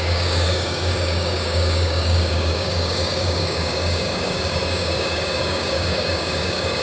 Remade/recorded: remade